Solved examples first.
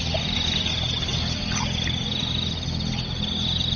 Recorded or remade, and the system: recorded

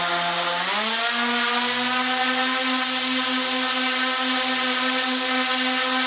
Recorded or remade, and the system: recorded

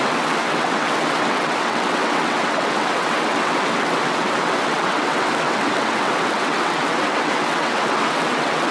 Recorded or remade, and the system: remade, vocoder, WaveNeXt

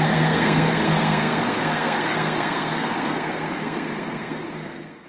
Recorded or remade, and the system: remade, codec, SNAC